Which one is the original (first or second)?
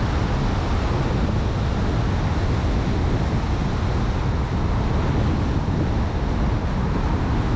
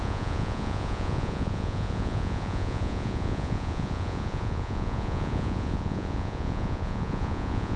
first